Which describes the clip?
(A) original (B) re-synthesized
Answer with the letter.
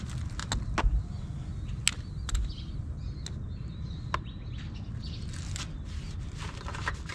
A